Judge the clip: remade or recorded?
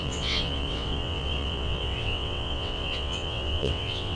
remade